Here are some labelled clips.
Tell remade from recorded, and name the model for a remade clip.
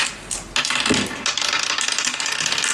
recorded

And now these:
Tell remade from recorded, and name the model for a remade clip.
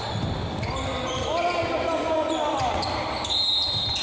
recorded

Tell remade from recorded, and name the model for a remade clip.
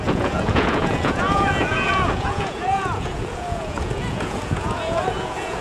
remade, vocoder, Vocos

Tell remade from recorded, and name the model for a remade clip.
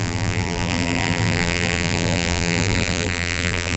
remade, vocoder, BigVGAN v2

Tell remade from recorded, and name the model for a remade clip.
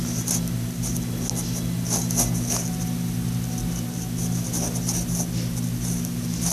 recorded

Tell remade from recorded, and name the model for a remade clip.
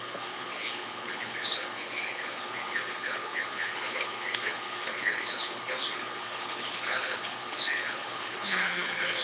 remade, codec, HILCodec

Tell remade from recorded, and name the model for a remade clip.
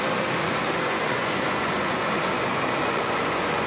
remade, vocoder, Vocos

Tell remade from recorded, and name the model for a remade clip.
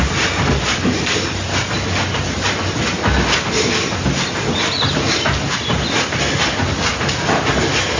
recorded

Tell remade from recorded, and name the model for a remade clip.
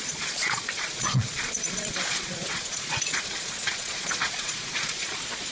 remade, vocoder, Vocos